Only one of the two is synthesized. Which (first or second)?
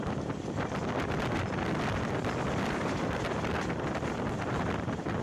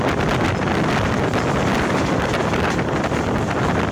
first